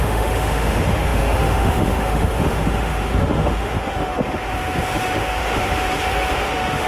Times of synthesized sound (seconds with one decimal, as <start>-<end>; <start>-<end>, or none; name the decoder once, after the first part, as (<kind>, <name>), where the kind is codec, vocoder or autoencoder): 0.0-6.9 (autoencoder, DAC-VAE)